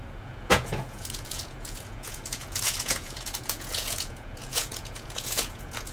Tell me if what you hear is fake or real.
fake